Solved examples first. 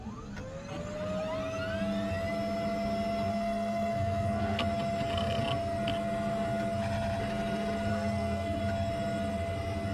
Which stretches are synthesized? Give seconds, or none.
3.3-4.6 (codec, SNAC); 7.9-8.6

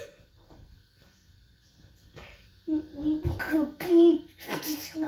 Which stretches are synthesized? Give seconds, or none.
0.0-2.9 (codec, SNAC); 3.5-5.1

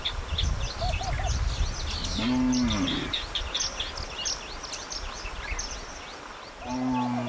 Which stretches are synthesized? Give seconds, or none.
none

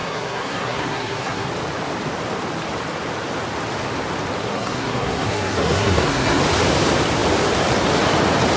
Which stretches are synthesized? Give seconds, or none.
0.0-1.5 (codec, SNAC); 4.4-6.4